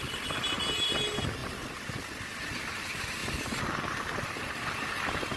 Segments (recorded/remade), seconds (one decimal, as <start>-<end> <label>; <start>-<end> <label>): 0.0-5.4 recorded